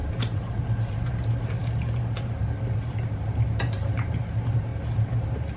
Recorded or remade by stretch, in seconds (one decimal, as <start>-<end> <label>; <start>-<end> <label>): 0.0-1.1 remade; 1.1-3.5 recorded; 3.5-4.7 remade; 4.7-5.6 recorded